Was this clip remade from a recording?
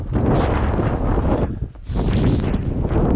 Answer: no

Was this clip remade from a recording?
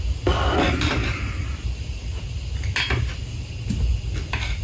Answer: no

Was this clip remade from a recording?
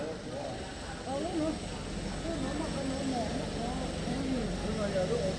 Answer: no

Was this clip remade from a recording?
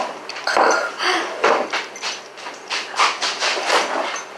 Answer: no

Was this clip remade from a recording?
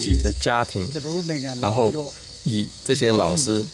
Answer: yes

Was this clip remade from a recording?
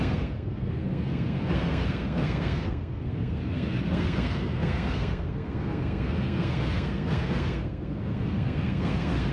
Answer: yes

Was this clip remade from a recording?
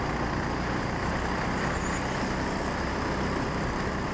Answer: no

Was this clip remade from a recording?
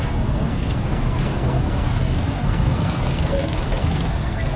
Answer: yes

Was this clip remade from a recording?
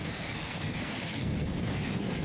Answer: yes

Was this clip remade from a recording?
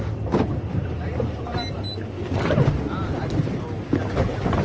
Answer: no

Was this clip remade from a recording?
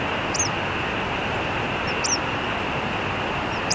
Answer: no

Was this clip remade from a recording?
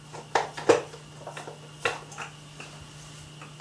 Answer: no